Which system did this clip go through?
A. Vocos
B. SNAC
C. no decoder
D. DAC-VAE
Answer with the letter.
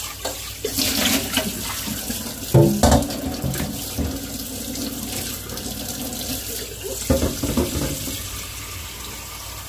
C